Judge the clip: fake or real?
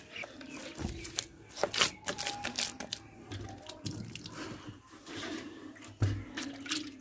real